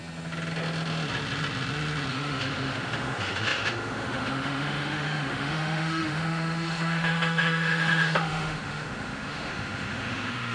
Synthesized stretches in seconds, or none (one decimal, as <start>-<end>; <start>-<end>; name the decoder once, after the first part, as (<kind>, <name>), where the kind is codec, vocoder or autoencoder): 2.1-10.5 (autoencoder, DAC-VAE)